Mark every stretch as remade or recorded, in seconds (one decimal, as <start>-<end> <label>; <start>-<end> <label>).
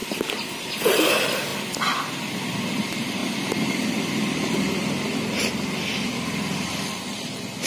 0.0-1.0 recorded; 1.0-7.7 remade